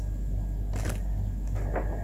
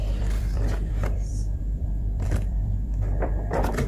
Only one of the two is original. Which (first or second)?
first